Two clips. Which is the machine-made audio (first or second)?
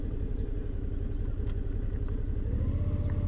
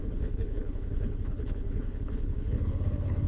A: second